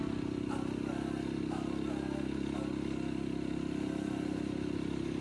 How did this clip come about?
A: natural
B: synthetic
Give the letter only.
A